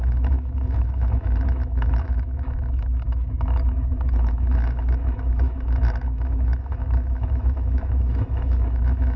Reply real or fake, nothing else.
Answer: fake